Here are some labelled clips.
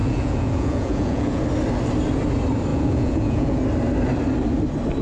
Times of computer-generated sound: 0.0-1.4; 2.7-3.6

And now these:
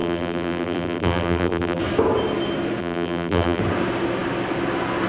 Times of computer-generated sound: 0.0-1.8; 2.8-3.6

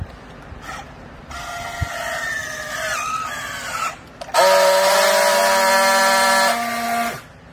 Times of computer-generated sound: none

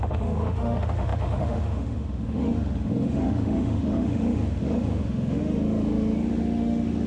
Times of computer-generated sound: 0.0-7.1

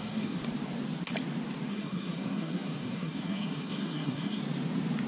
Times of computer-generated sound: 0.0-0.4; 1.7-4.4

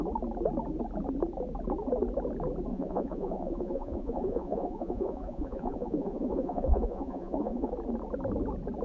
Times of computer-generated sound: 2.7-7.7